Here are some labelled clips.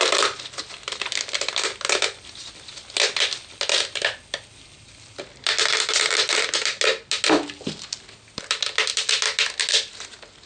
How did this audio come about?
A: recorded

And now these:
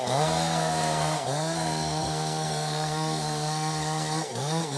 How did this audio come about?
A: remade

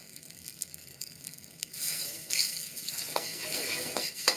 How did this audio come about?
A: remade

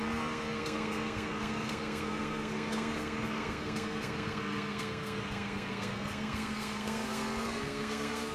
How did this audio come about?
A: remade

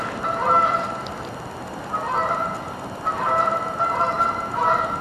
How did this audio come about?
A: recorded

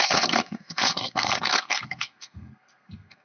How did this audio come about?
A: remade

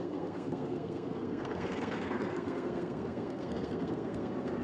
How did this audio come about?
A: remade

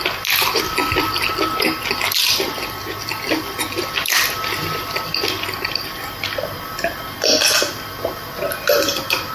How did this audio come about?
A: recorded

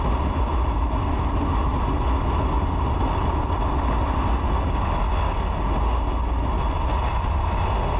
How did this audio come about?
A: recorded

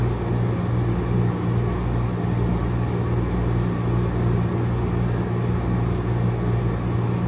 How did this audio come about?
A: recorded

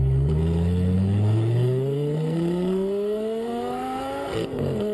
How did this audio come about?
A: remade